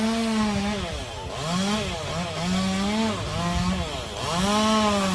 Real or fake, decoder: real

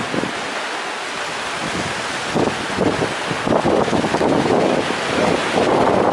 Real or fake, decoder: real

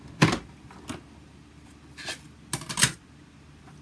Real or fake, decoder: real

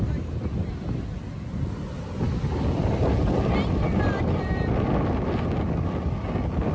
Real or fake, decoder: real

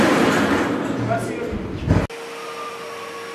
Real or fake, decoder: real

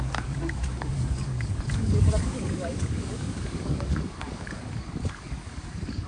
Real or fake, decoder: fake, codec, DAC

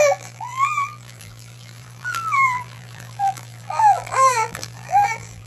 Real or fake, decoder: fake, vocoder, BigVGAN v2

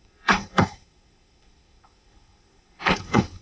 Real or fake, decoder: fake, codec, SNAC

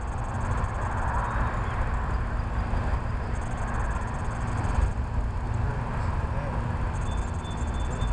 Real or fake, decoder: real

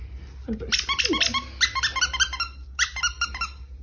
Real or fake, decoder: real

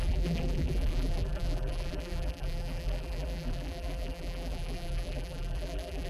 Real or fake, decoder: fake, vocoder, BigVGAN v2